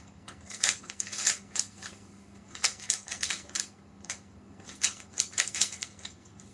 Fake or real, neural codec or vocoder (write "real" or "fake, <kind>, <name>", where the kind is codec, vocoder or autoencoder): fake, codec, SNAC